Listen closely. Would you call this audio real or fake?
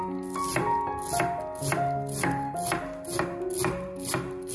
real